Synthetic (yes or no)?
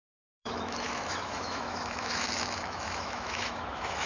yes